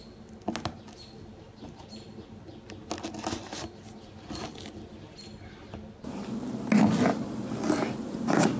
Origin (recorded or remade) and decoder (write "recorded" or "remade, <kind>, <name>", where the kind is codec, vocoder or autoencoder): recorded